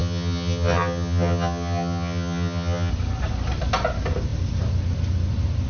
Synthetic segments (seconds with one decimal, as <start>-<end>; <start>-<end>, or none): 0.0-2.9